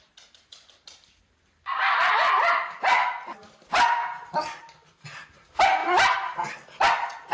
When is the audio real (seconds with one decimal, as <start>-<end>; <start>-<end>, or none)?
0.0-7.3